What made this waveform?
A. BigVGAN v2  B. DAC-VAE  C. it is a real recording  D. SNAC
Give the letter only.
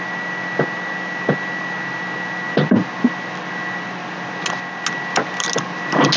C